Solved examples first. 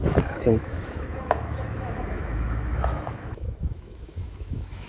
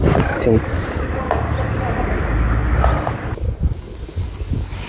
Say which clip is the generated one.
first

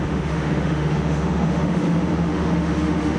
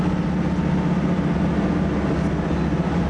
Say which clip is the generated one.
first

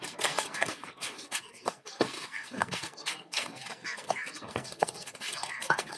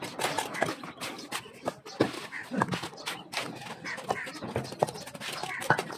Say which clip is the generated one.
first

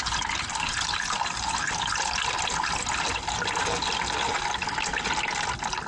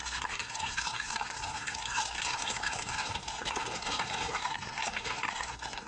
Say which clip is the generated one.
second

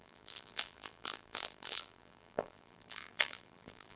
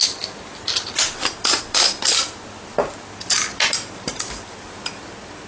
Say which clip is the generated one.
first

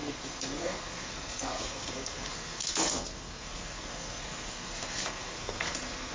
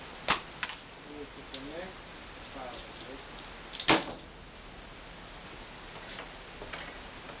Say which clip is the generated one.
first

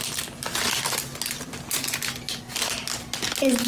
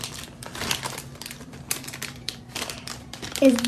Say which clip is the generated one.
second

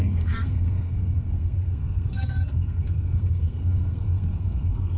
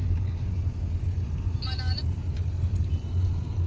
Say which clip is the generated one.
first